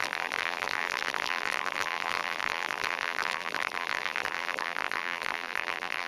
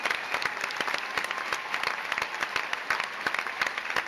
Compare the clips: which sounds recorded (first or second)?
second